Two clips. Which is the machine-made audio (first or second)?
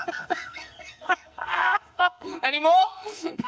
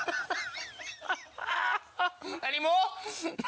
first